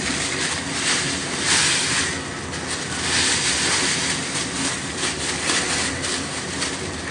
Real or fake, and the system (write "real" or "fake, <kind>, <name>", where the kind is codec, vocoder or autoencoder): real